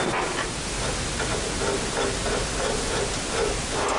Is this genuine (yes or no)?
yes